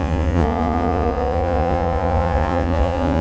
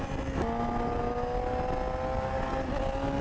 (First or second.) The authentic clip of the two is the second